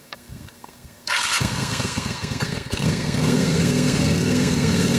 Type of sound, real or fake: fake